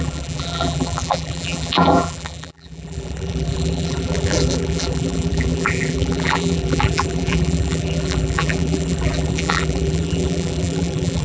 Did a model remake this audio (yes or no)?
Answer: yes